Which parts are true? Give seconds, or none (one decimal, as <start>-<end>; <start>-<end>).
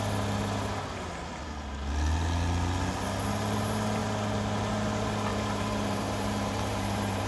0.0-5.3